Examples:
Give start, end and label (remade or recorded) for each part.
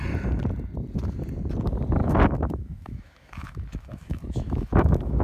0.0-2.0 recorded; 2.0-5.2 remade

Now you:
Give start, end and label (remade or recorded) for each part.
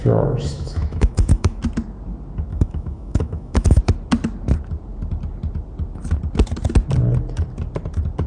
0.0-1.6 remade; 1.6-2.5 recorded; 2.5-3.8 remade; 3.8-8.3 recorded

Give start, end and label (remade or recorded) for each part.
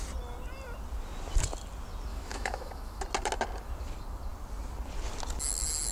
0.0-2.1 recorded; 2.1-3.0 remade; 3.0-5.9 recorded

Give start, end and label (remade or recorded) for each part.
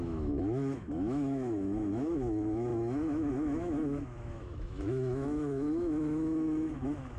0.0-7.2 remade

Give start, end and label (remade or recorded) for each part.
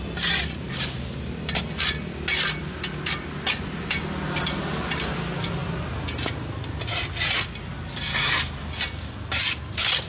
0.0-10.1 recorded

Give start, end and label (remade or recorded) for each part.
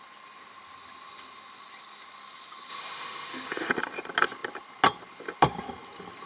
0.0-2.7 recorded; 2.7-3.7 remade; 3.7-6.3 recorded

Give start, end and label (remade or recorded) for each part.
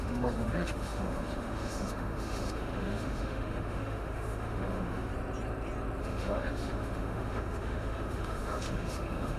0.0-5.1 remade; 5.1-6.0 recorded; 6.0-9.4 remade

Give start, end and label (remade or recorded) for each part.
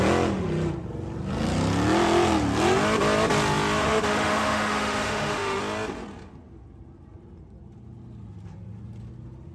0.0-3.8 recorded; 3.8-5.6 remade; 5.6-9.5 recorded